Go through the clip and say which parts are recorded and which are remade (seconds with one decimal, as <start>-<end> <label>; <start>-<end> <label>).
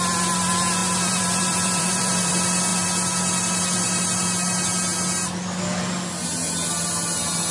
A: 0.0-0.8 recorded; 0.8-2.3 remade; 2.3-7.5 recorded